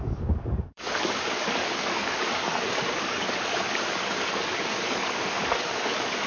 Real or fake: fake